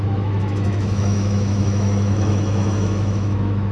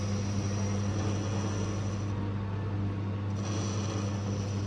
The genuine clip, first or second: second